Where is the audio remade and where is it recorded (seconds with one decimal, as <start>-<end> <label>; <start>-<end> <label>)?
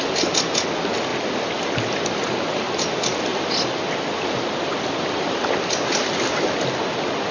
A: 0.0-7.3 recorded